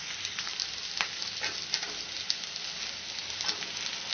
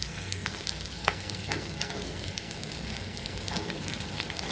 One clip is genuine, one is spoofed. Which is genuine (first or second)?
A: first